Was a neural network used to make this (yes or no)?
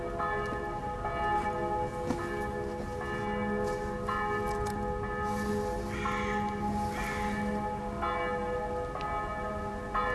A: no